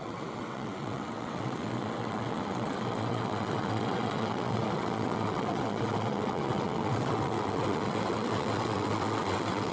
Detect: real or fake fake